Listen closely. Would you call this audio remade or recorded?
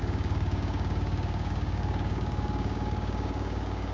remade